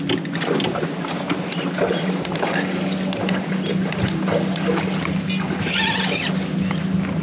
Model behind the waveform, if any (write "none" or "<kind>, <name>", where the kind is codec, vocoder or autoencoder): none